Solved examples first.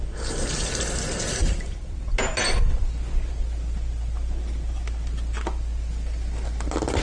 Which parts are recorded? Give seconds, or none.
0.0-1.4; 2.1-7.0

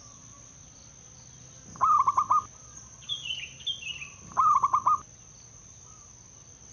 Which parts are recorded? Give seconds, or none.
0.0-2.6; 3.3-6.7

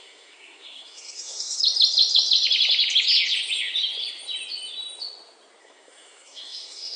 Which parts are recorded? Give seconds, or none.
1.6-5.6